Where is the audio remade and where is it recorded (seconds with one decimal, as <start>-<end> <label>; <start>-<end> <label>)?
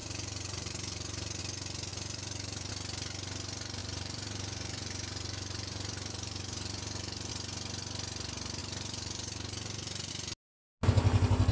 0.0-1.4 remade; 1.4-1.9 recorded; 1.9-2.7 remade; 2.7-3.8 recorded; 3.8-7.3 remade; 7.3-8.6 recorded; 8.6-10.1 remade; 10.1-11.5 recorded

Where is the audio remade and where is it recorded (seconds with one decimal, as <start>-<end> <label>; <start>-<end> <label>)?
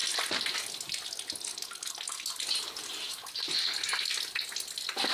0.0-5.1 recorded